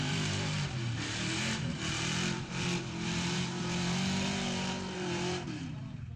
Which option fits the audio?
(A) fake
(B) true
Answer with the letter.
A